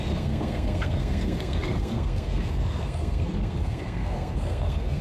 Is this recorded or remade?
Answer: remade